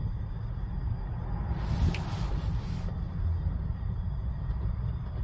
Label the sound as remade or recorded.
recorded